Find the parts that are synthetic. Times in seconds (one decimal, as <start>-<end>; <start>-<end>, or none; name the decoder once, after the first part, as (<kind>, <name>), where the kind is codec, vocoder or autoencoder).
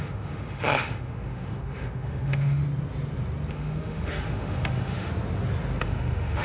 0.0-2.6 (autoencoder, DAC-VAE); 3.5-5.1; 5.8-6.4